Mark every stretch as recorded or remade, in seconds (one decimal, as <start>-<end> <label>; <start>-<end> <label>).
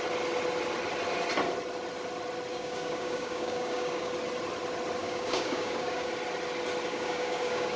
0.0-2.5 recorded; 2.5-4.1 remade; 4.1-5.0 recorded; 5.0-6.1 remade; 6.1-6.9 recorded; 6.9-7.8 remade